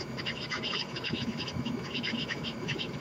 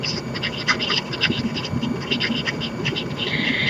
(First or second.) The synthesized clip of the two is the first